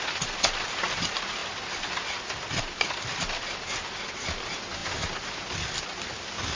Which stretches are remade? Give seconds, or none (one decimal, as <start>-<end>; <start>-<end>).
none